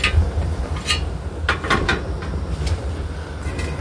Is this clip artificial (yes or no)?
no